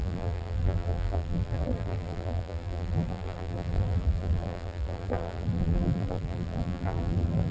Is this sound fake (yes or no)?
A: yes